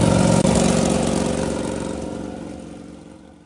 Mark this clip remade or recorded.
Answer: recorded